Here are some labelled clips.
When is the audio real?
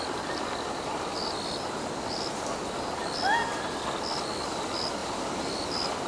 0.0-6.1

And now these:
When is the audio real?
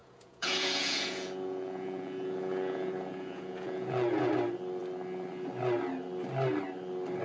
4.3-7.2